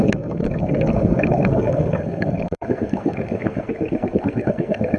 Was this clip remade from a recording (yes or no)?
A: yes